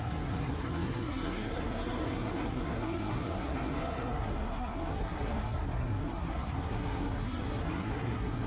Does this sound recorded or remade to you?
remade